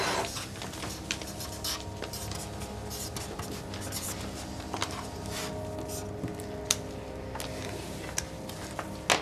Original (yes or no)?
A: yes